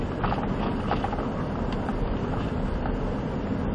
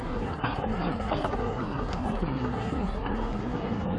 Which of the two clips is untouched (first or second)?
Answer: first